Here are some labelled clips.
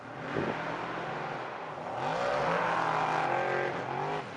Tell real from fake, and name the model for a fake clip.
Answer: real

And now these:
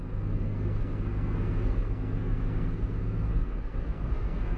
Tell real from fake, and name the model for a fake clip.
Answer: fake, codec, SNAC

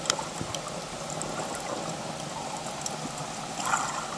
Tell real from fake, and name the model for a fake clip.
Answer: real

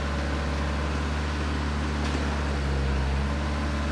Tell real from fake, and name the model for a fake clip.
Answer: real